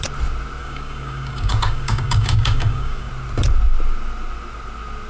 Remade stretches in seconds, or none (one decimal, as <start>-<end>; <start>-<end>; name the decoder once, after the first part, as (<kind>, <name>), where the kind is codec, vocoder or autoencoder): 0.6-3.1 (codec, DAC)